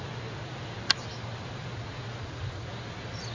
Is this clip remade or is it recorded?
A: recorded